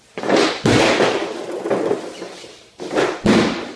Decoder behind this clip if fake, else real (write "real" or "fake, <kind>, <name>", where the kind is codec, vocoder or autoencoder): real